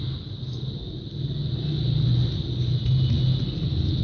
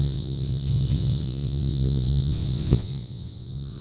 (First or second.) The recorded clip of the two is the first